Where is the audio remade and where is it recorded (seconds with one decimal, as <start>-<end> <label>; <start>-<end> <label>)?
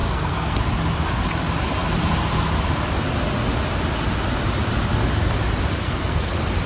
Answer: 0.0-0.6 remade; 0.6-5.8 recorded; 5.8-6.3 remade; 6.3-6.7 recorded